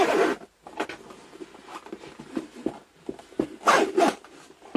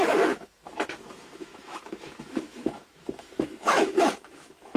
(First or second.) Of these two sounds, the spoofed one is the second